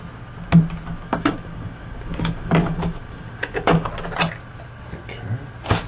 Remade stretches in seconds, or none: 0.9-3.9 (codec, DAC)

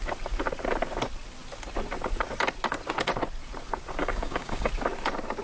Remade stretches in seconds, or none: 4.0-4.7 (codec, DAC)

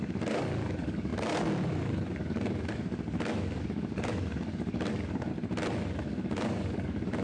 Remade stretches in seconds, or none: 0.0-5.3 (codec, DAC); 6.0-7.2

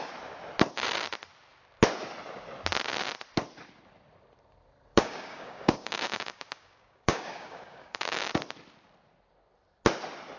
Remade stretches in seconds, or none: 4.9-8.3 (codec, DAC)

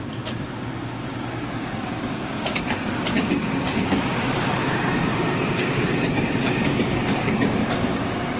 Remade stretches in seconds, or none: 0.0-8.4 (codec, DAC)

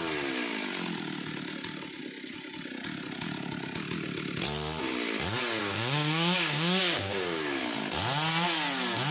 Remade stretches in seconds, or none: 5.6-7.6 (codec, DAC)